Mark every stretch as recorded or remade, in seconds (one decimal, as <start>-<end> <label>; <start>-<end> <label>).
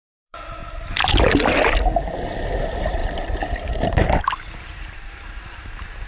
0.0-0.6 remade; 0.6-2.6 recorded; 2.6-6.1 remade